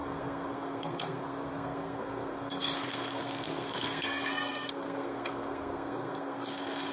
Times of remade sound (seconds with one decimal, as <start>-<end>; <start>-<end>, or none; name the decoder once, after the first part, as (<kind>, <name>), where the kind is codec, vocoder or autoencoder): 0.0-6.9 (codec, SNAC)